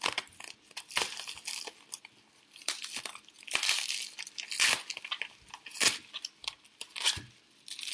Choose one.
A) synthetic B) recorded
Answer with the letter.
B